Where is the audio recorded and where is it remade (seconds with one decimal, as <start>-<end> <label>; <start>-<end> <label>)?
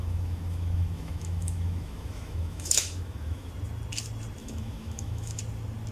0.0-3.5 remade; 3.5-4.4 recorded; 4.4-5.4 remade; 5.4-5.9 recorded